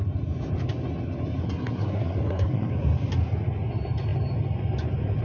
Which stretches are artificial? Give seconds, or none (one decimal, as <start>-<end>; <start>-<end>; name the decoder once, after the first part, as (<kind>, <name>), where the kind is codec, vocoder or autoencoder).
1.4-2.7 (codec, SNAC)